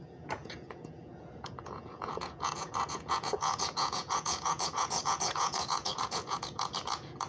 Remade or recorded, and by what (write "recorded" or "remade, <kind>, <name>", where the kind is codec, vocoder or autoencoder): remade, vocoder, Vocos